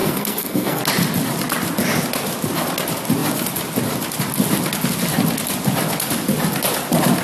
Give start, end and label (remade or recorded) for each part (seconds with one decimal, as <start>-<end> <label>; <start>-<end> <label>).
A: 0.0-0.8 remade; 0.8-7.2 recorded